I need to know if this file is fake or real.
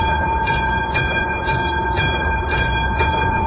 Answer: fake